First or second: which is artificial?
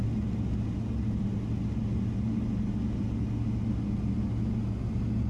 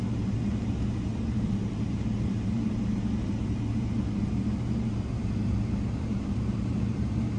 second